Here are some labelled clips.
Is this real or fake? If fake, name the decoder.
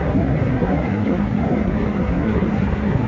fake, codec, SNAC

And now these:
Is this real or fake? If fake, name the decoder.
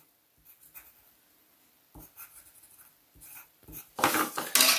real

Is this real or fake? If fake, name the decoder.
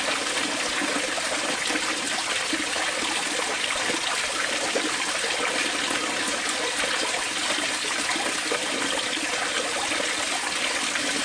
real